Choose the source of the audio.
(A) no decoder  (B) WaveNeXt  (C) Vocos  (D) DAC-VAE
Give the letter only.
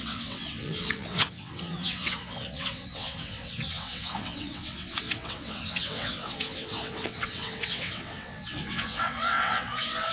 B